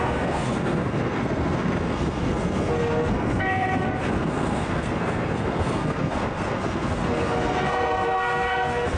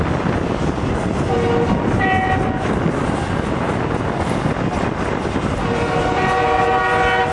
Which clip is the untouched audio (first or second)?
second